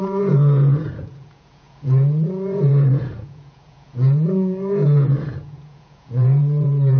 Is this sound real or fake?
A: fake